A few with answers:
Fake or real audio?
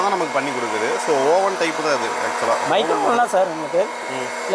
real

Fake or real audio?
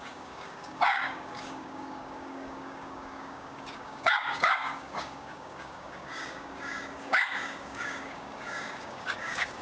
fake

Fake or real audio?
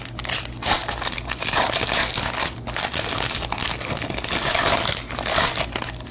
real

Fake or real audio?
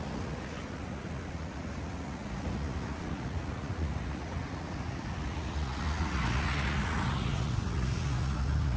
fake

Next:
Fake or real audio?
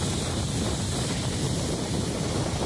real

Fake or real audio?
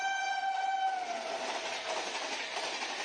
fake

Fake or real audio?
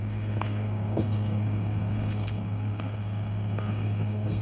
fake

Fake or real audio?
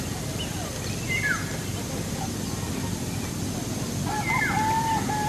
real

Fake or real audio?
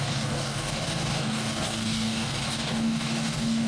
fake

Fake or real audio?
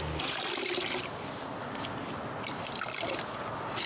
real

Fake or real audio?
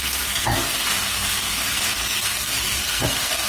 fake